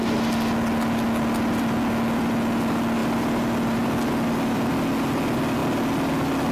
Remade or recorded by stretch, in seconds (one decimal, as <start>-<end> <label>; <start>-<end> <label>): 0.0-6.5 recorded